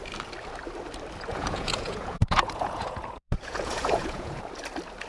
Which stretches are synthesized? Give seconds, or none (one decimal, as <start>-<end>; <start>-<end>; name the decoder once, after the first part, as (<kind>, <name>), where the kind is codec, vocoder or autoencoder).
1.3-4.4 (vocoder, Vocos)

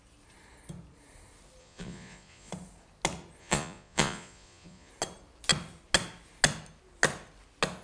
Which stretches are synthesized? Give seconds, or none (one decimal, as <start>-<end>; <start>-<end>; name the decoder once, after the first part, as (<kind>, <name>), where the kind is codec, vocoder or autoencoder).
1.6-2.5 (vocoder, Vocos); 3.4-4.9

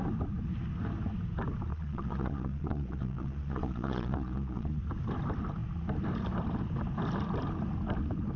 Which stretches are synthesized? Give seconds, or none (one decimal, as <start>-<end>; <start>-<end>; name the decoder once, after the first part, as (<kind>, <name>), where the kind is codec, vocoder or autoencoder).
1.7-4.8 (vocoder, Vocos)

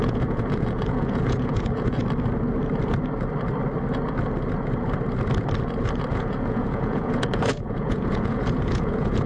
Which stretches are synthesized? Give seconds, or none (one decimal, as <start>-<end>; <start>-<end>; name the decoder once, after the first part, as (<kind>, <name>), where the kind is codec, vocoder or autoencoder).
0.0-2.0 (vocoder, Vocos); 6.1-9.3

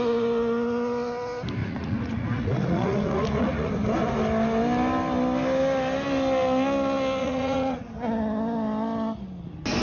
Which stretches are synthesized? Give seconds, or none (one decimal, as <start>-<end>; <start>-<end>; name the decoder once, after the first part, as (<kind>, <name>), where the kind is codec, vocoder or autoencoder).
1.6-3.7 (vocoder, Vocos); 7.2-7.9

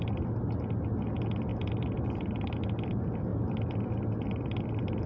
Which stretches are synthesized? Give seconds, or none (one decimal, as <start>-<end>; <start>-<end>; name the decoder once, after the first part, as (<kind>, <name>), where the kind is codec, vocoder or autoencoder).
none

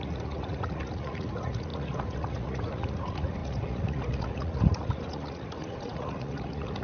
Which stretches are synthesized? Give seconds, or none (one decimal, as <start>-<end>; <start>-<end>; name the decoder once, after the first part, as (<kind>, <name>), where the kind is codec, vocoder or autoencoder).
0.0-6.8 (vocoder, Vocos)

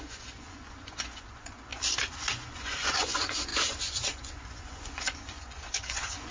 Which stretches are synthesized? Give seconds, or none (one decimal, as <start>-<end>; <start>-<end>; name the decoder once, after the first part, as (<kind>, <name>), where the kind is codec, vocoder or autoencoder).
0.0-1.7 (vocoder, Vocos); 2.3-6.3